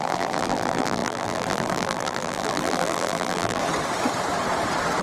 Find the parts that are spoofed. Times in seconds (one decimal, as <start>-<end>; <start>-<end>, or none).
0.0-3.6

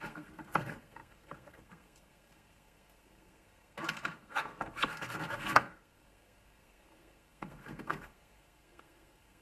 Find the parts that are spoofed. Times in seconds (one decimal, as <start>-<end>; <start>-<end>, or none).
0.0-9.4

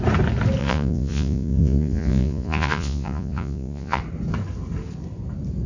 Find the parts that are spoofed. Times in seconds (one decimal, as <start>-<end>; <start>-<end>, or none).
0.6-4.0

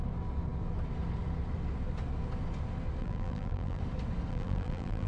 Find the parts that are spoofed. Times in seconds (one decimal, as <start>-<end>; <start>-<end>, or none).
3.0-3.8; 4.3-5.1

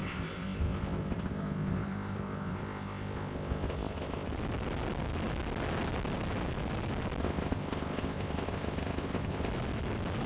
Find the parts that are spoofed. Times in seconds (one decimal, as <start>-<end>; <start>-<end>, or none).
0.0-4.3; 7.2-9.5